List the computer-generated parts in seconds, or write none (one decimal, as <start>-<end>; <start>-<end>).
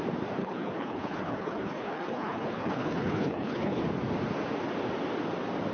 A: 0.4-3.8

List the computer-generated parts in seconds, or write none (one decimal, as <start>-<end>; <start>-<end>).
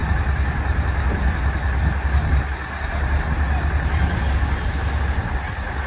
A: none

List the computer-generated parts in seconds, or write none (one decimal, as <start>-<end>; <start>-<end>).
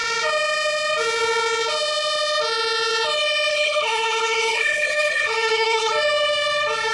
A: 3.5-5.9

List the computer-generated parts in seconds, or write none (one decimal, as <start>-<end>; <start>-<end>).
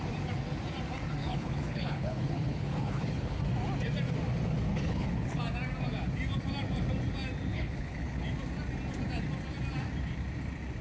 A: 1.2-3.4; 4.7-5.4; 7.5-8.2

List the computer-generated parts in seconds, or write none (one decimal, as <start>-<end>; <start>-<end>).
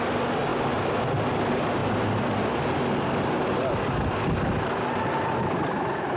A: none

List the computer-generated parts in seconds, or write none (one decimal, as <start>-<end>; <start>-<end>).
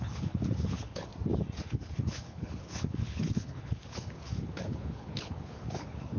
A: 0.0-1.1; 1.6-6.2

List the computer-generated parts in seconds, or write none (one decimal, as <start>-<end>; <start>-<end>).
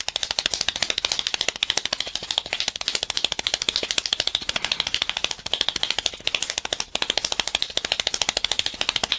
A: none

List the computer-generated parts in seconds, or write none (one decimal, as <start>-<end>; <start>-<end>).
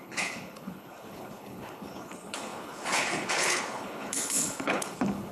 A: 0.0-5.3